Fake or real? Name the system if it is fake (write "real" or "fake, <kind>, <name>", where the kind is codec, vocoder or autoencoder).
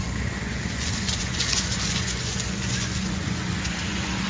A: fake, vocoder, Vocos